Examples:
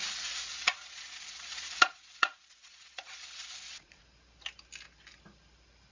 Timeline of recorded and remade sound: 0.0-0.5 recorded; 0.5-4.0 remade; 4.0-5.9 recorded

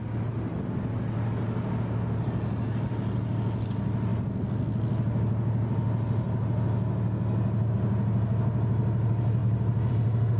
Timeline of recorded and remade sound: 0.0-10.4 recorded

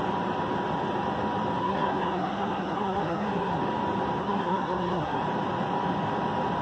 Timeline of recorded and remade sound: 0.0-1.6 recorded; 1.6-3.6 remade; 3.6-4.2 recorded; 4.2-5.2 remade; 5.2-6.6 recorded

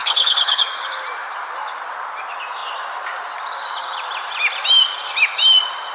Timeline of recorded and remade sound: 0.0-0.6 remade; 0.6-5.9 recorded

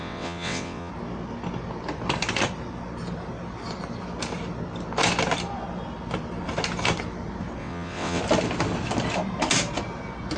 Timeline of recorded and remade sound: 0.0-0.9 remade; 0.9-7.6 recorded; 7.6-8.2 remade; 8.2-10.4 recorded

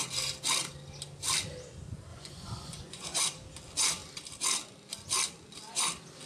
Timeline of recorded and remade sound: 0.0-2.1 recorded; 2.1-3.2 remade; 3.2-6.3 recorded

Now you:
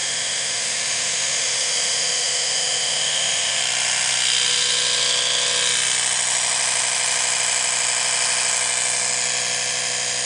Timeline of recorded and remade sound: 0.0-3.6 remade; 3.6-10.3 recorded

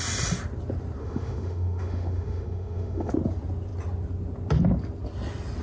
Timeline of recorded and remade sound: 0.0-1.0 recorded; 1.0-3.1 remade; 3.1-5.6 recorded